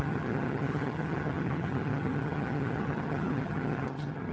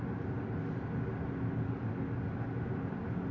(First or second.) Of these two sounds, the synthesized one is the first